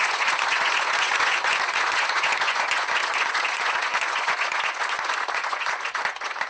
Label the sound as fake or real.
fake